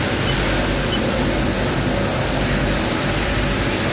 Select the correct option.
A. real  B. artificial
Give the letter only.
A